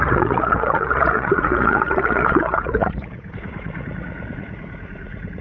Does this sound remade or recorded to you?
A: remade